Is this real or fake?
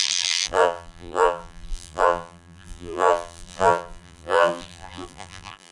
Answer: fake